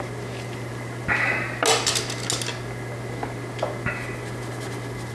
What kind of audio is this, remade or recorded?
recorded